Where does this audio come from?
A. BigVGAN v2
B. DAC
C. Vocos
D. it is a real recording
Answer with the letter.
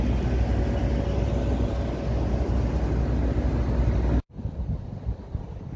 D